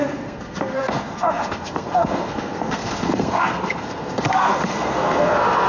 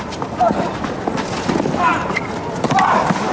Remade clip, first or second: first